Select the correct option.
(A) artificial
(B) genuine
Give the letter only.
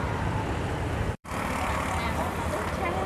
A